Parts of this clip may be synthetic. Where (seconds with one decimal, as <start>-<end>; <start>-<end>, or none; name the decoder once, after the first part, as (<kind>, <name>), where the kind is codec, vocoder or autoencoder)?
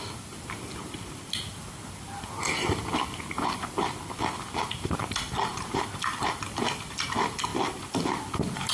none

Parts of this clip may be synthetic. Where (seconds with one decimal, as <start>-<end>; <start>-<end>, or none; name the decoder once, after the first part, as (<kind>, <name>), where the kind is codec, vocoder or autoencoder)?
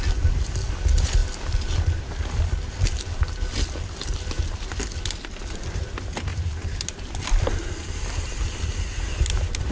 none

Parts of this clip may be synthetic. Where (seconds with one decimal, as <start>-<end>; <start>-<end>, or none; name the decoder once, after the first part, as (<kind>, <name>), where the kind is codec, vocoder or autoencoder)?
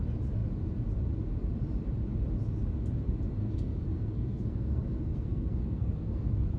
3.4-6.6 (codec, SNAC)